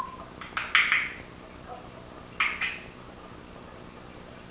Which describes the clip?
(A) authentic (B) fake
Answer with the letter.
A